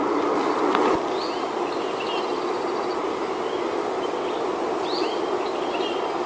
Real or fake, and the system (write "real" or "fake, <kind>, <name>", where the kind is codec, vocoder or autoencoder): real